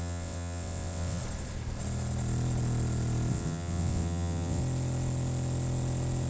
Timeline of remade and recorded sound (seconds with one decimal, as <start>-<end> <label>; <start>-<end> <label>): 0.0-1.2 remade; 1.2-3.3 recorded; 3.3-4.6 remade; 4.6-6.3 recorded